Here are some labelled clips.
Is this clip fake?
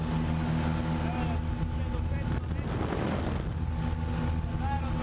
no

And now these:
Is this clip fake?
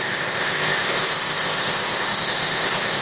yes